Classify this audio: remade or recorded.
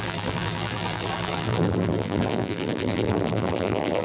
remade